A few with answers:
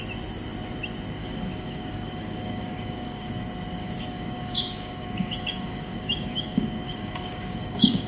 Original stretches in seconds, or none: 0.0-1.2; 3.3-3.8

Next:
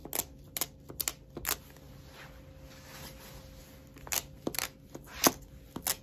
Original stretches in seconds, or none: 0.0-6.0